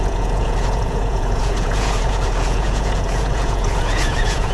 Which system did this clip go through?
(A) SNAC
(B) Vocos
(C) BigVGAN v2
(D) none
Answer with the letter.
B